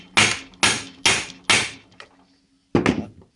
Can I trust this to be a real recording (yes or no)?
yes